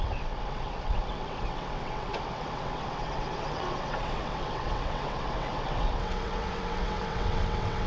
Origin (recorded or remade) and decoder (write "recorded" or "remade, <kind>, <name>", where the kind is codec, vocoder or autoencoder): remade, vocoder, WaveNeXt